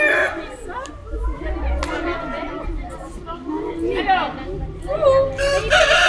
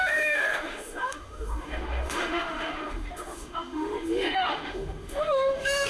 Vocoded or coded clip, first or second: second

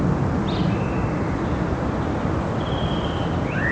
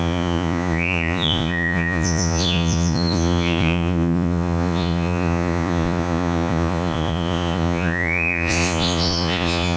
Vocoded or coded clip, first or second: second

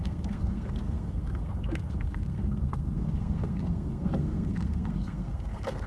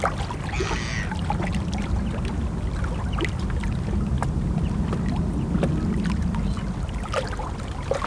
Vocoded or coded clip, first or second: first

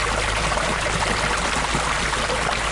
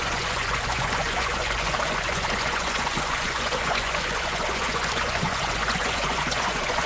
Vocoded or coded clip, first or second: second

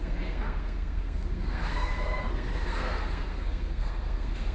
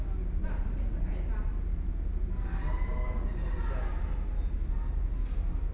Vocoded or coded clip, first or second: first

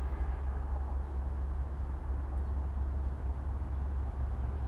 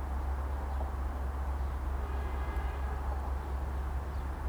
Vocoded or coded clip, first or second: first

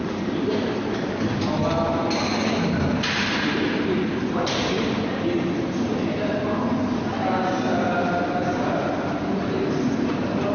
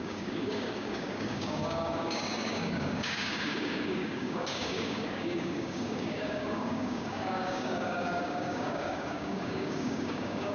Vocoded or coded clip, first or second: second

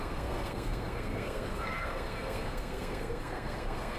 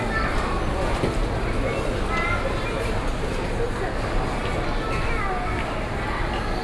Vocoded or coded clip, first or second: first